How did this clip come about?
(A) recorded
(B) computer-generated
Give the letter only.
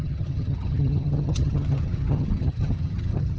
B